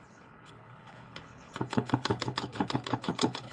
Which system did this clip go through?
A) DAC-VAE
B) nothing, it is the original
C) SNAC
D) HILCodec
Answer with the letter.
D